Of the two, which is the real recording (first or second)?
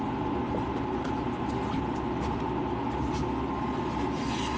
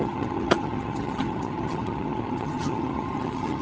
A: first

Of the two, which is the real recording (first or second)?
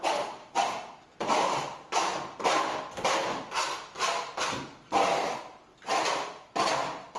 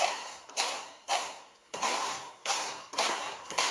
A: first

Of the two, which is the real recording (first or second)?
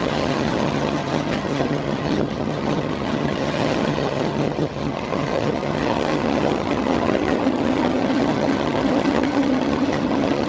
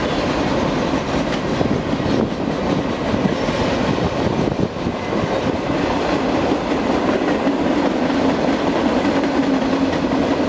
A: second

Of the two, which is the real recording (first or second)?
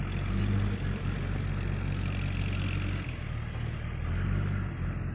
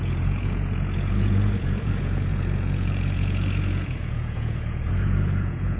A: first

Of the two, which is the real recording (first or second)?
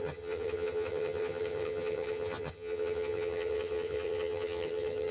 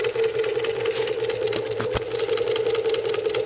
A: second